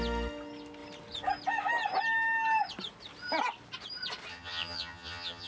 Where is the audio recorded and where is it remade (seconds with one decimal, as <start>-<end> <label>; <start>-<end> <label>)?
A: 0.0-4.3 recorded; 4.3-5.5 remade